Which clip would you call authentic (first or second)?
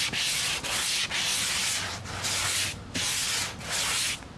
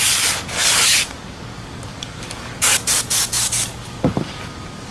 first